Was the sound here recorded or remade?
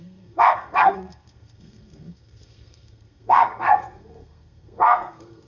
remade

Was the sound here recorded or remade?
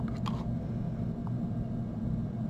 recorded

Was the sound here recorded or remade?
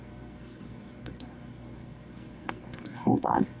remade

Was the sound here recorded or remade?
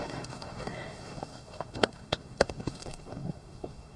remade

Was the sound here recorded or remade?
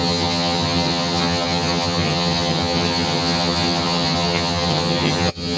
remade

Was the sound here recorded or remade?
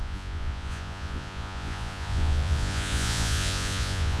remade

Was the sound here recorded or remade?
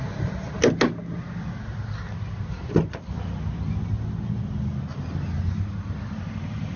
recorded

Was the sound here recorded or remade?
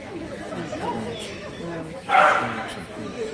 remade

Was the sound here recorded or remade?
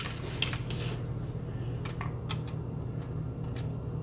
recorded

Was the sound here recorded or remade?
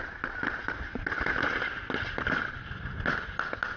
recorded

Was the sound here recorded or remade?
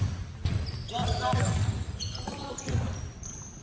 remade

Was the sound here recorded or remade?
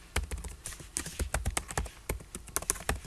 recorded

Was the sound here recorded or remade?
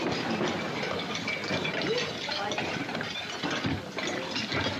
recorded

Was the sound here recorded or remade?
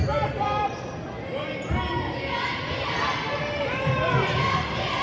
recorded